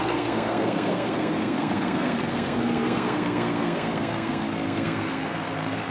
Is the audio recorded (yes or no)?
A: no